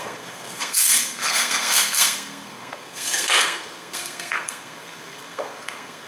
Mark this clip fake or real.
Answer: fake